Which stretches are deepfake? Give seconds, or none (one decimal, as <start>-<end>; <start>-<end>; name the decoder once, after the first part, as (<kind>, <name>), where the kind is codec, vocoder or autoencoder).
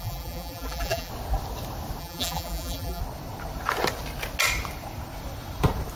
0.0-1.1 (vocoder, BigVGAN v2); 2.0-3.0